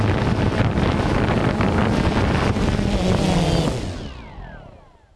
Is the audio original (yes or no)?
yes